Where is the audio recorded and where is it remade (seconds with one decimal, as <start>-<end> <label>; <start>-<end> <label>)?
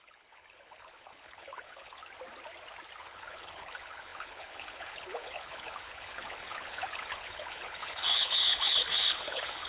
0.0-2.0 remade; 2.0-3.0 recorded; 3.0-9.7 remade